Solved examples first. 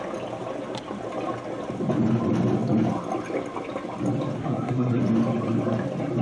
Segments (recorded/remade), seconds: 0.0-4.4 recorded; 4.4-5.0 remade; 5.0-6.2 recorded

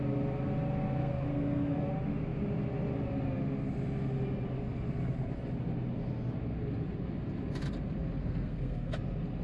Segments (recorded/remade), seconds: 0.0-1.0 recorded; 1.0-1.9 remade; 1.9-8.2 recorded; 8.2-8.9 remade; 8.9-9.4 recorded

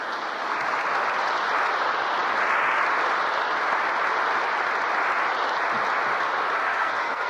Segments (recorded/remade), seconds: 0.0-6.6 recorded; 6.6-7.3 remade

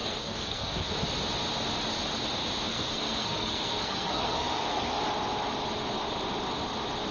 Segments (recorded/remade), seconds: 0.0-0.9 remade; 0.9-2.7 recorded; 2.7-5.0 remade; 5.0-7.1 recorded

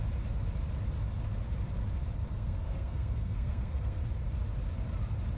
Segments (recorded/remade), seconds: 0.0-2.3 recorded; 2.3-4.0 remade; 4.0-5.4 recorded

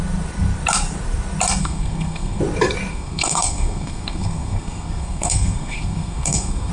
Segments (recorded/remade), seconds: 0.0-1.6 recorded; 1.6-2.4 remade; 2.4-2.9 recorded; 2.9-6.7 remade

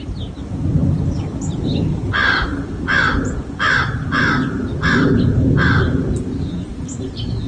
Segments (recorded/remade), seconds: 0.0-7.5 recorded